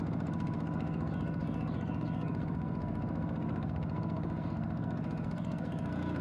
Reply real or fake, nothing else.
fake